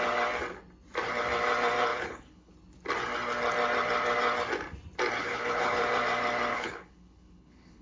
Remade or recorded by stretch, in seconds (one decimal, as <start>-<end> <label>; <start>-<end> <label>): 0.0-1.9 recorded; 1.9-2.5 remade; 2.5-5.2 recorded; 5.2-5.8 remade; 5.8-6.5 recorded; 6.5-7.8 remade

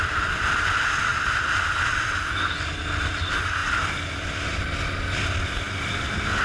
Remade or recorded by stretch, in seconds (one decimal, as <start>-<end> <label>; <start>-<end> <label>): 0.0-1.1 recorded; 1.1-1.7 remade; 1.7-6.4 recorded

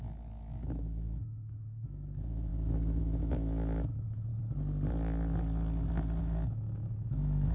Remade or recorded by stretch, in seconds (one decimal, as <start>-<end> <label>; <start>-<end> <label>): 0.0-2.5 remade; 2.5-3.0 recorded; 3.0-4.3 remade; 4.3-6.2 recorded; 6.2-7.5 remade

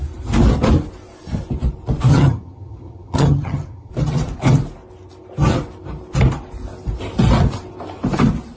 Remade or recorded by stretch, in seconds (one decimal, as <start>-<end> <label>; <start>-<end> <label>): 0.0-2.1 recorded; 2.1-3.9 remade; 3.9-8.6 recorded

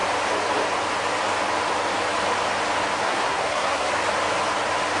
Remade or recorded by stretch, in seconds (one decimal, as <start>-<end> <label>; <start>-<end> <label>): 0.0-3.0 recorded; 3.0-3.9 remade; 3.9-5.0 recorded